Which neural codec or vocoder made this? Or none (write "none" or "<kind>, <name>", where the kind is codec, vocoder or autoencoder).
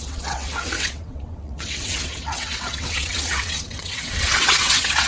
vocoder, WaveNeXt